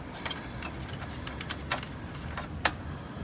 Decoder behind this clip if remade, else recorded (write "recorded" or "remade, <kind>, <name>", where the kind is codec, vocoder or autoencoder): remade, vocoder, BigVGAN v2